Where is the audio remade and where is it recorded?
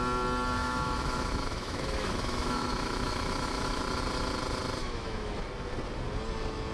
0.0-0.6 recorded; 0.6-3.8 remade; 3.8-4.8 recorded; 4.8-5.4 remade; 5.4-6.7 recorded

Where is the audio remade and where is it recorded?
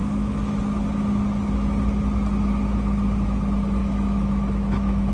0.0-0.6 remade; 0.6-3.8 recorded; 3.8-5.1 remade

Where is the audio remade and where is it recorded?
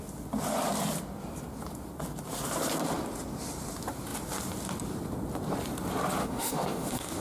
0.0-6.2 recorded; 6.2-7.2 remade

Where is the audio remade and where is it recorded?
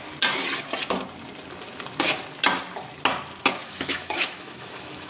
0.0-3.6 recorded; 3.6-5.1 remade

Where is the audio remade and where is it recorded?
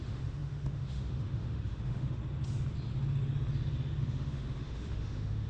0.0-2.2 remade; 2.2-4.0 recorded; 4.0-5.5 remade